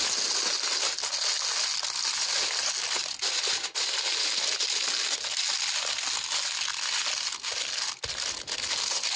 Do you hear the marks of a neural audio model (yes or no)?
no